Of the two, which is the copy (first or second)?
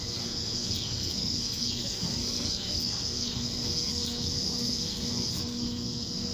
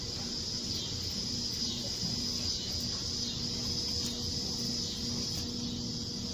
first